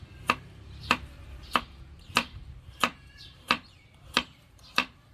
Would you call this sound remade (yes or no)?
yes